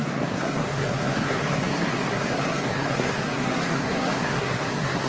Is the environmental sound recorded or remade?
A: remade